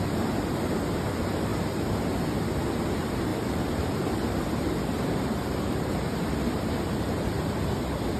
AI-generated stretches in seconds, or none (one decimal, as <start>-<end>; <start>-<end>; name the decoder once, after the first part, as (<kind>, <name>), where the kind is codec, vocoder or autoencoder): 1.5-2.2 (vocoder, BigVGAN v2); 3.3-6.7